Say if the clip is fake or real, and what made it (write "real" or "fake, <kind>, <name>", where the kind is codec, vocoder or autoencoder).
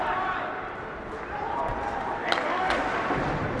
real